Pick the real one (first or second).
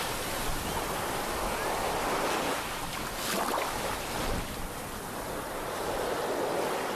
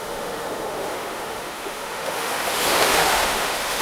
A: first